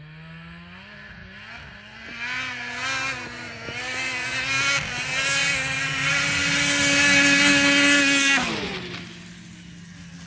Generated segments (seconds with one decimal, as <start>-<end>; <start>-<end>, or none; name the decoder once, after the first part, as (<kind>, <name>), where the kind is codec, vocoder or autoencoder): none